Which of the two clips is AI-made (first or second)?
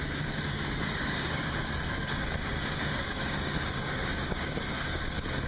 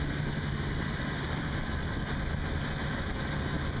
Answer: first